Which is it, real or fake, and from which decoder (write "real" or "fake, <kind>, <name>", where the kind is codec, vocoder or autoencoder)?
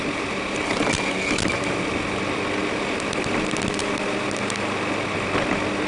real